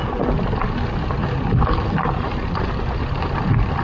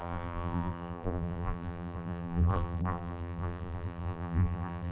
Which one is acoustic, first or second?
first